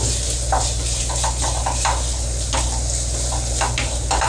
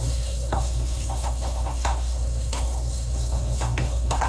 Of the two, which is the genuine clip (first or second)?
first